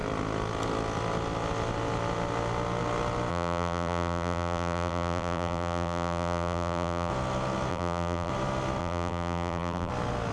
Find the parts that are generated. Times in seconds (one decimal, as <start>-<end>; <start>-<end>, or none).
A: 3.3-7.1; 7.7-8.3; 8.8-9.9